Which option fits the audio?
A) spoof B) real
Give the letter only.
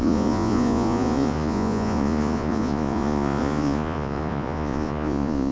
A